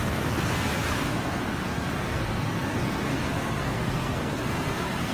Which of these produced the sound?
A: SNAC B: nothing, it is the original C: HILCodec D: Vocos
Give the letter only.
A